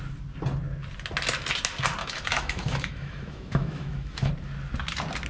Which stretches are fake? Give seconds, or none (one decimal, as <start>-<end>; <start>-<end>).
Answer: 2.0-4.3